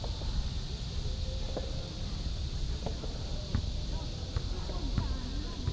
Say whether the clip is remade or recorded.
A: recorded